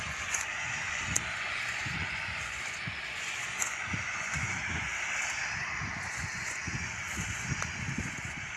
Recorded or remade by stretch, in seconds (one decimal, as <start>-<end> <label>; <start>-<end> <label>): 0.0-4.9 remade; 4.9-5.9 recorded; 5.9-8.6 remade

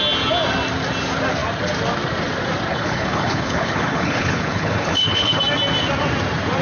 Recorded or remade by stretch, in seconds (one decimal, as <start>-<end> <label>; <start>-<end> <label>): 0.0-2.7 recorded; 2.7-5.4 remade; 5.4-6.6 recorded